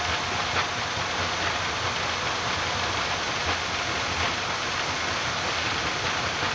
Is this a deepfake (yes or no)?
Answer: no